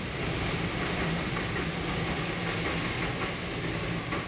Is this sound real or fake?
real